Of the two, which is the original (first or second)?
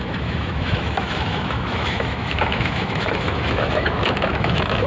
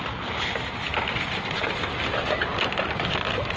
second